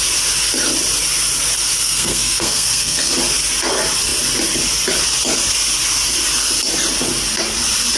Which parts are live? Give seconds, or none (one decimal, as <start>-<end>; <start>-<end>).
0.0-1.8; 3.1-8.0